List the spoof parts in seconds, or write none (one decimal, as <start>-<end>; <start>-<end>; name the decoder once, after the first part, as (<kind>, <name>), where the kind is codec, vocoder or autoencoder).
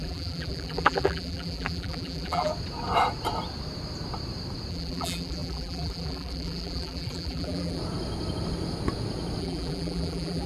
0.0-2.5 (vocoder, BigVGAN v2); 4.7-7.8; 9.4-10.5